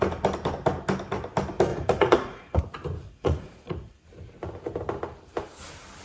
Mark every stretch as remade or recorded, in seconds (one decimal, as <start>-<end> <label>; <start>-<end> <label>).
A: 0.0-1.7 recorded; 1.7-2.6 remade; 2.6-3.0 recorded; 3.0-4.0 remade; 4.0-6.0 recorded